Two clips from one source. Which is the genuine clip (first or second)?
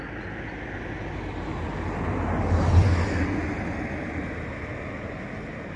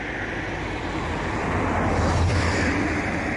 first